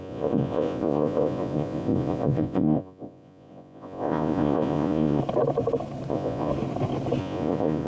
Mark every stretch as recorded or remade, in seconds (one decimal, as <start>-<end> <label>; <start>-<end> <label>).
0.0-5.2 remade; 5.2-6.1 recorded; 6.1-6.5 remade; 6.5-7.2 recorded; 7.2-7.9 remade